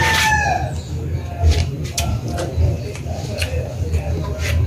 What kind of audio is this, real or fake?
real